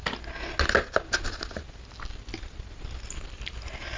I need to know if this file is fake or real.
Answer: real